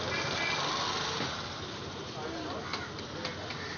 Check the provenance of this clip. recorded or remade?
recorded